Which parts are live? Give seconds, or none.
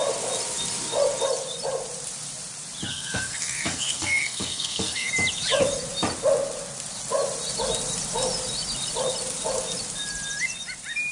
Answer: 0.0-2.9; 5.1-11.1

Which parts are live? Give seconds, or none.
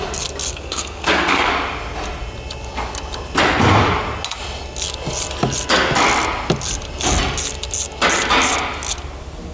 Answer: 0.0-0.5; 1.5-9.5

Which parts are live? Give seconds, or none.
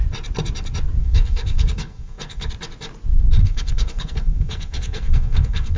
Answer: 0.0-1.0; 2.5-3.4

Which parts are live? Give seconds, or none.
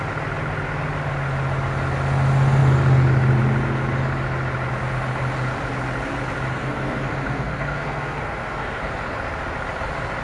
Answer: 0.0-6.5; 8.8-10.2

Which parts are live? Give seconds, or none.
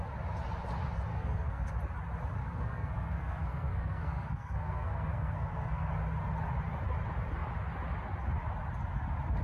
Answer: 0.0-1.1; 1.7-2.4; 5.9-9.4